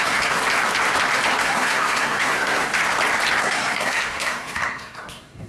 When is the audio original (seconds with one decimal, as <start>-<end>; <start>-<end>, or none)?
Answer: 0.4-1.4; 2.7-3.4